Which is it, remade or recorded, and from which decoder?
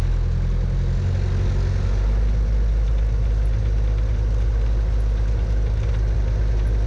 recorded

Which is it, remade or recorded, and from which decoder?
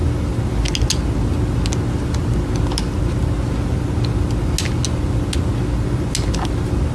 recorded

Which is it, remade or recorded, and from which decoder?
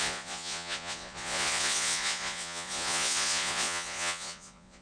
remade, vocoder, Vocos